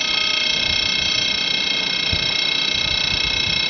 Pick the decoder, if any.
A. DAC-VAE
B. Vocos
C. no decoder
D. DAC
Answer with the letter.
C